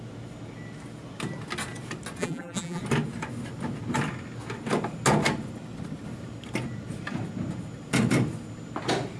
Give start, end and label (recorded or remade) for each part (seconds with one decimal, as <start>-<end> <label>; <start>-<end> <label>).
0.0-2.2 recorded; 2.2-2.8 remade; 2.8-9.2 recorded